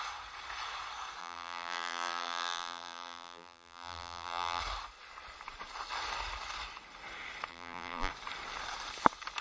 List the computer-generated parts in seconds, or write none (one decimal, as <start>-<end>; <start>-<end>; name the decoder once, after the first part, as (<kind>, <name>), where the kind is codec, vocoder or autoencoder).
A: 1.2-4.6 (vocoder, BigVGAN v2); 7.5-8.1